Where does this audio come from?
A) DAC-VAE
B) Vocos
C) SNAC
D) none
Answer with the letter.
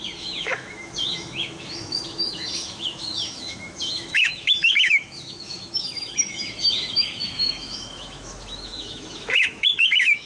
A